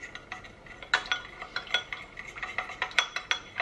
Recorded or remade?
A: recorded